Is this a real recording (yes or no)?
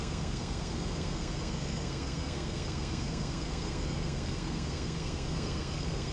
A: no